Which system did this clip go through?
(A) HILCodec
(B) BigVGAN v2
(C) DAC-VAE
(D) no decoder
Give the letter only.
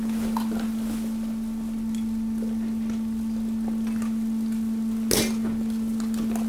D